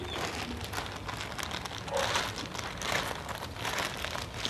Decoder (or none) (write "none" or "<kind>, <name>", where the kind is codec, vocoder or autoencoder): none